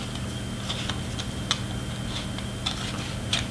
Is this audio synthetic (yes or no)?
no